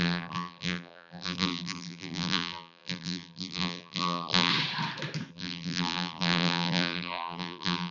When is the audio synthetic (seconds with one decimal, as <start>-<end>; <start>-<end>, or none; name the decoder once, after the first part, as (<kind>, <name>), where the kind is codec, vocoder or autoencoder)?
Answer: 0.0-4.5 (vocoder, BigVGAN v2); 5.3-7.9